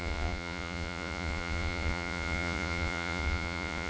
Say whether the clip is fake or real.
fake